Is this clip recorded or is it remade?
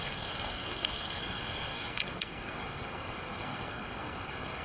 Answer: remade